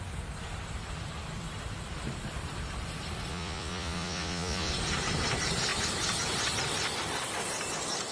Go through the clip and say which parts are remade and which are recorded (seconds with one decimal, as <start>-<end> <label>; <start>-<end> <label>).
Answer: 0.0-3.3 recorded; 3.3-4.7 remade; 4.7-8.1 recorded